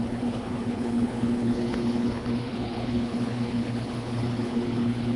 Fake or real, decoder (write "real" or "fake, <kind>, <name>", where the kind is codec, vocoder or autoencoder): fake, codec, HILCodec